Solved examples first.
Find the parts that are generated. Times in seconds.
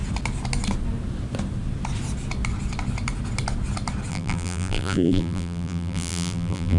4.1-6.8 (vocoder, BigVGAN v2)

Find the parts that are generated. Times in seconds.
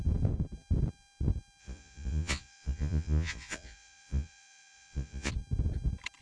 1.6-5.3 (vocoder, Vocos)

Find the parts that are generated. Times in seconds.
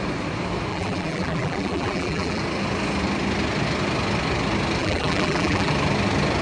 0.7-2.4 (vocoder, BigVGAN v2); 4.8-5.7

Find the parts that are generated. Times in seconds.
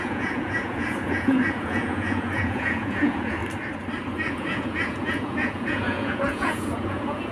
0.0-3.4 (vocoder, Vocos); 4.3-7.3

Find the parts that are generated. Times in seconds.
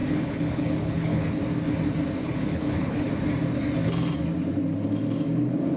0.0-1.4 (codec, HILCodec); 2.2-3.1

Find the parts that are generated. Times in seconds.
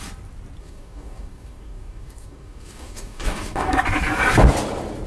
0.6-3.7 (codec, DAC)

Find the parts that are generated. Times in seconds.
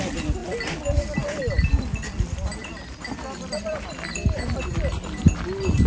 2.6-4.9 (vocoder, BigVGAN v2)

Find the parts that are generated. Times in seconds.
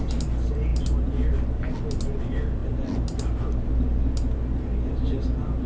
none